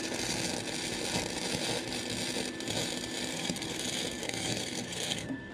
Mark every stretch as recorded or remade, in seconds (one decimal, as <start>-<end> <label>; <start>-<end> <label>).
0.0-3.3 recorded; 3.3-3.8 remade; 3.8-4.2 recorded; 4.2-5.5 remade